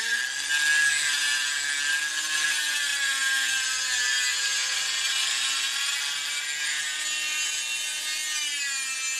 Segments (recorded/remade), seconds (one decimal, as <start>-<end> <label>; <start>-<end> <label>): 0.0-9.2 recorded